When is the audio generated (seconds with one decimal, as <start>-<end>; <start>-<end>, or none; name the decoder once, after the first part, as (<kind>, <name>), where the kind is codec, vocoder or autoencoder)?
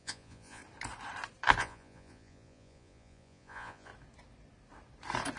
0.0-0.6 (vocoder, Vocos); 1.6-3.9